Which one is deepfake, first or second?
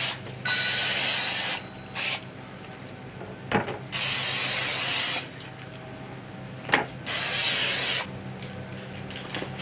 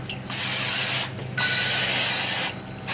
second